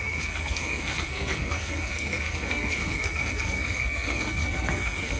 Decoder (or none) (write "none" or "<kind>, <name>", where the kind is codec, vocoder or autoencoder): codec, SNAC